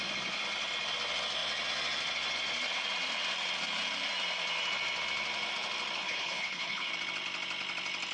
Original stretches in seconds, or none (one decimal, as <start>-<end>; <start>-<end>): 0.0-6.0; 6.9-8.1